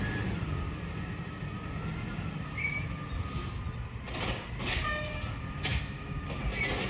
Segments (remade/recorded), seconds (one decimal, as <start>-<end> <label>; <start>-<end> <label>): 0.0-5.7 recorded; 5.7-6.4 remade; 6.4-6.9 recorded